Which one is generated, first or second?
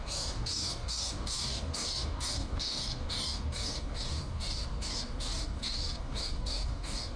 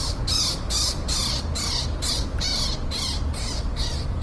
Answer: first